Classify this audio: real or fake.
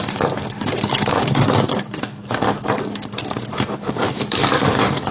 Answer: fake